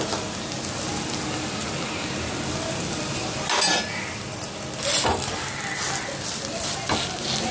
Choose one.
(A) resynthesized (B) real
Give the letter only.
B